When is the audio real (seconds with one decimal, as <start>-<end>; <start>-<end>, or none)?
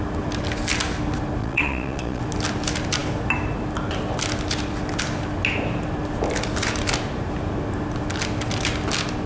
0.0-1.4; 2.2-9.3